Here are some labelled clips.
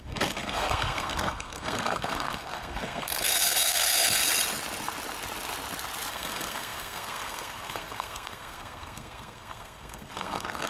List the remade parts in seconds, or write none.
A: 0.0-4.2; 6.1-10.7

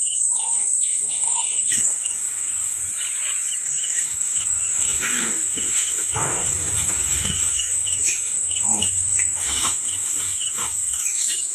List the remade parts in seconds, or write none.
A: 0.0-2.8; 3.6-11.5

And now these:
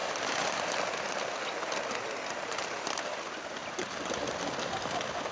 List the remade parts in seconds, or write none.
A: none

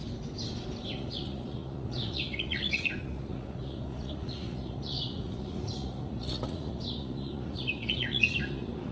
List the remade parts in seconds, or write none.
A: 0.9-8.9

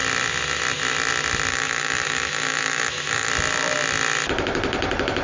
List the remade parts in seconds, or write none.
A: 1.5-3.3

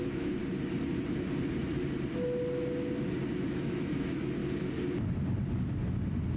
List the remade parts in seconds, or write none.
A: 0.0-0.4; 3.5-4.4